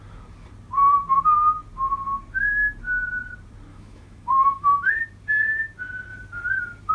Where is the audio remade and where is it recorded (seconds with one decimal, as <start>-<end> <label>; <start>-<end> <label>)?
0.0-3.7 recorded; 3.7-4.9 remade; 4.9-6.9 recorded